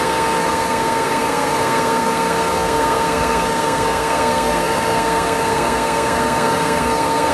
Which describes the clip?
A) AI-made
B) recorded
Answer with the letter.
A